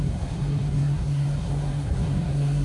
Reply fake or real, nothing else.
fake